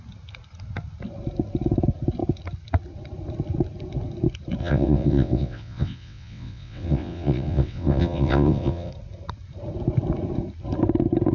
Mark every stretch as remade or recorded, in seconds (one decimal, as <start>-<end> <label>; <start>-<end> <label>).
0.0-4.6 recorded; 4.6-8.9 remade; 8.9-11.3 recorded